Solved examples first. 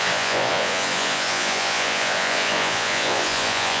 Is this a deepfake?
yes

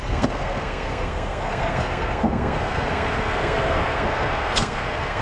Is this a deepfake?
yes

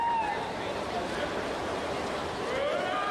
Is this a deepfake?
no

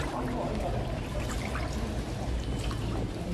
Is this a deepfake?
no